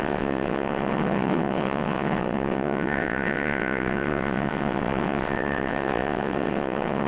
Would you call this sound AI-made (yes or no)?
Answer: yes